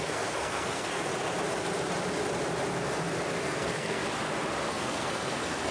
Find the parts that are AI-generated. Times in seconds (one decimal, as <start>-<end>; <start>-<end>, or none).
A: 0.0-1.1; 3.4-4.0; 4.7-5.7